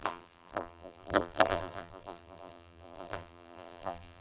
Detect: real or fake fake